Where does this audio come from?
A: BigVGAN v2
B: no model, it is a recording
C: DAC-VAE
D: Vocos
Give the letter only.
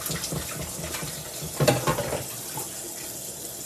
B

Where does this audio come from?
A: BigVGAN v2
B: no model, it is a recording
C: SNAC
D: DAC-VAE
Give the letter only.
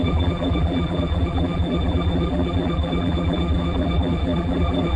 A